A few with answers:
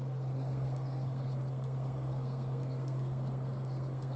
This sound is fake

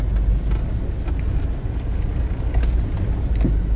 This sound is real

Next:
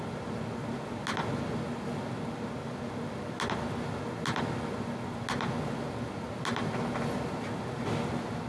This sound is real